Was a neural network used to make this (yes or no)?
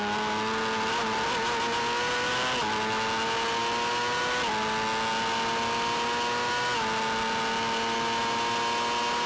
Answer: no